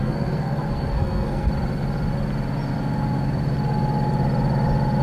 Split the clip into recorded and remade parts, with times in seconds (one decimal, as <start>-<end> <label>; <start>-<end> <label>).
0.0-1.5 remade; 1.5-5.0 recorded